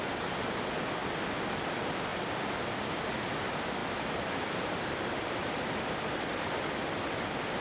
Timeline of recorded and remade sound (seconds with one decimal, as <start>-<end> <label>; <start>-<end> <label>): 0.0-7.6 remade